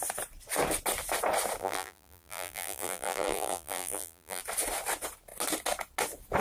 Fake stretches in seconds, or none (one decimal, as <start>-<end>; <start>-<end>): 1.6-4.4